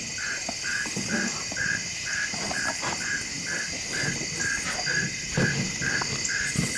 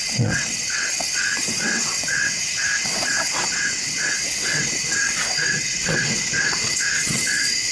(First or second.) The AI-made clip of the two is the second